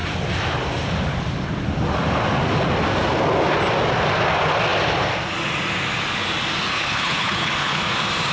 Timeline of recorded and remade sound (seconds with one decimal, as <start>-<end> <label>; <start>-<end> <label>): 0.0-6.7 recorded; 6.7-7.8 remade; 7.8-8.3 recorded